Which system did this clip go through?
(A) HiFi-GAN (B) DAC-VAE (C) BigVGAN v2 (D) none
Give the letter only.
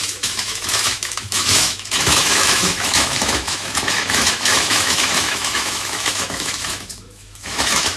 B